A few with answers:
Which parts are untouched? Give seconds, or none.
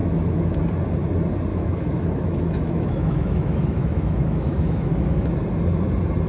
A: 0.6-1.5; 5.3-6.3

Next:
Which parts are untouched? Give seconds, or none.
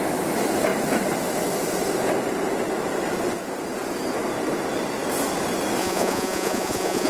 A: 0.0-5.8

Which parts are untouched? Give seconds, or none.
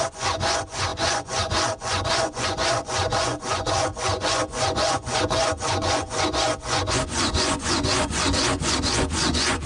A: none